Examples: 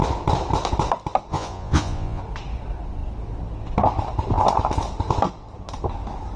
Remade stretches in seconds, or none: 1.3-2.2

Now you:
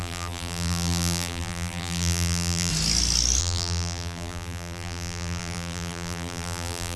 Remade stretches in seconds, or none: 0.0-2.7; 3.4-7.0

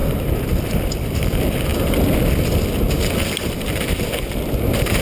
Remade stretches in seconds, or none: 0.0-0.9

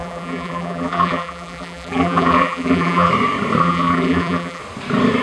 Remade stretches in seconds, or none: 0.0-3.1; 3.6-4.6

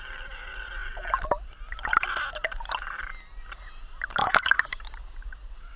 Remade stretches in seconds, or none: 4.2-4.8

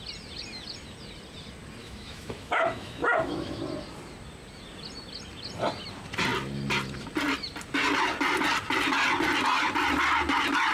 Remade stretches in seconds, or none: 1.8-3.6